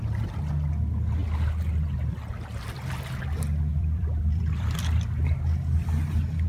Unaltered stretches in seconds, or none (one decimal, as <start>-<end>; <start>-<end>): 0.0-3.7; 5.2-6.5